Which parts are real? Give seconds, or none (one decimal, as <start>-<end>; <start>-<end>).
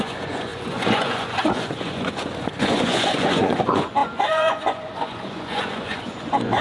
none